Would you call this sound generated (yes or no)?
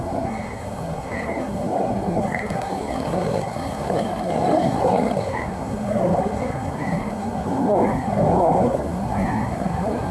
yes